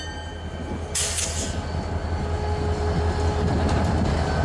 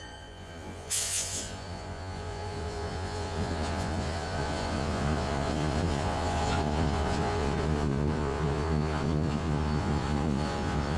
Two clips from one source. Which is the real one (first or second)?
first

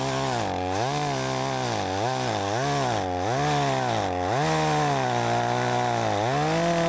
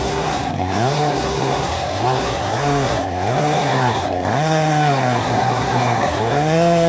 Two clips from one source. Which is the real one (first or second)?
first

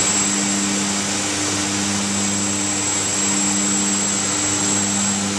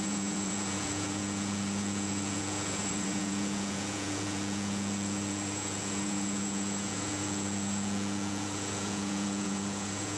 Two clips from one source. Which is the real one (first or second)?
first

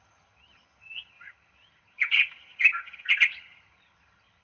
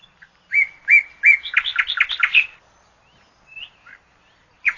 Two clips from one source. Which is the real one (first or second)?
second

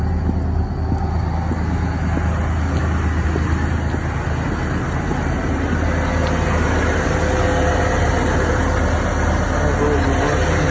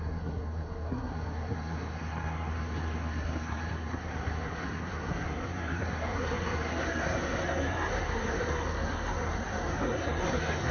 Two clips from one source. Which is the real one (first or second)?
first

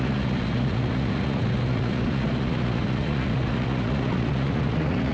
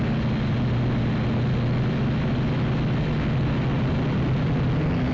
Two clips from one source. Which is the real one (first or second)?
second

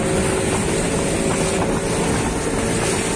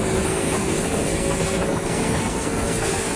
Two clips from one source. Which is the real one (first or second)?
first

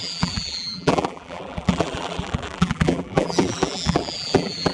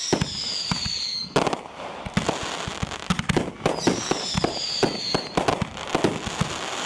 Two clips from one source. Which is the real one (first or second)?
second